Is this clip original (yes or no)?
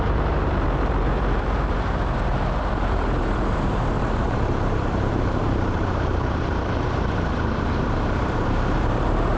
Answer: no